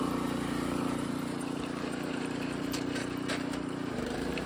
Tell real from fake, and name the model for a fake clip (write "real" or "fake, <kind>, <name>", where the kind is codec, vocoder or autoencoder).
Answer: fake, vocoder, BigVGAN v2